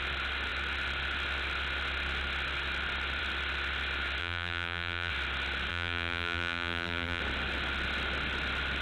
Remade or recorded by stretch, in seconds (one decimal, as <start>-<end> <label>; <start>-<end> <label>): 0.0-4.2 recorded; 4.2-5.1 remade; 5.1-5.7 recorded; 5.7-7.2 remade; 7.2-8.8 recorded